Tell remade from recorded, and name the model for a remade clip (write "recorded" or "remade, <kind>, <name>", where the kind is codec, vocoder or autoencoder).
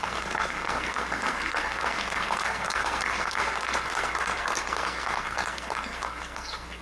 remade, codec, SNAC